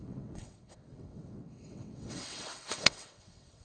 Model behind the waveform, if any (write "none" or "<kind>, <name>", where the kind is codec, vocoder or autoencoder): vocoder, WaveNeXt